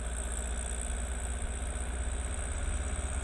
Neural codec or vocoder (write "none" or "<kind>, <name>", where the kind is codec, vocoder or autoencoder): none